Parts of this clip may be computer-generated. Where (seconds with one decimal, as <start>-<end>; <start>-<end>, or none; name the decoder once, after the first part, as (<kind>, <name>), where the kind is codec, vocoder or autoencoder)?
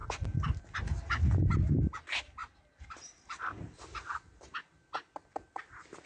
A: none